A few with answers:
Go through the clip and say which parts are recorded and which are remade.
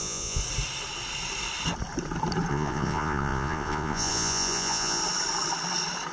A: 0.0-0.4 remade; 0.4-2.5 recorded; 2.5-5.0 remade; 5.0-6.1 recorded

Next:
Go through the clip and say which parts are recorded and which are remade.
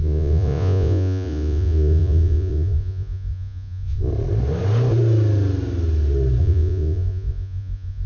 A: 0.0-4.1 remade; 4.1-6.4 recorded; 6.4-8.1 remade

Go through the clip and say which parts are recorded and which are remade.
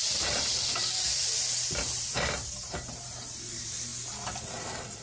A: 0.0-3.9 remade; 3.9-4.5 recorded; 4.5-5.0 remade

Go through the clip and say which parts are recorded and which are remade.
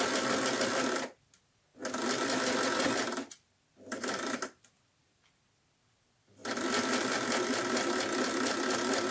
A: 0.0-9.1 recorded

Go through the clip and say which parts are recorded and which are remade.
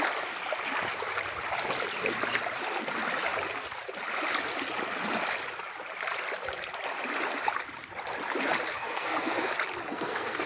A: 0.0-8.7 recorded; 8.7-9.5 remade; 9.5-9.9 recorded; 9.9-10.5 remade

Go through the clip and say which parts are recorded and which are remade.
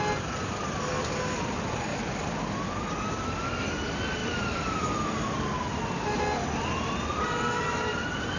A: 0.0-4.2 recorded; 4.2-4.8 remade; 4.8-7.1 recorded; 7.1-8.4 remade